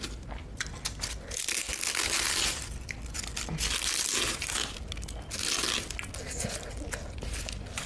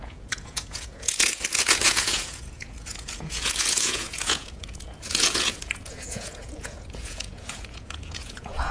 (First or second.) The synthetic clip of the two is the second